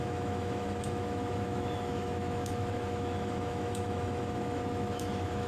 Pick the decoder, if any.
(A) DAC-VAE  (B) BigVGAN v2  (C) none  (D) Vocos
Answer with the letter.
A